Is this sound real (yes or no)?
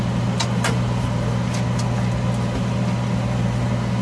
yes